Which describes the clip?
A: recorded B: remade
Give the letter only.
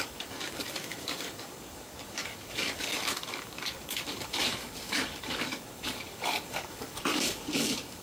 B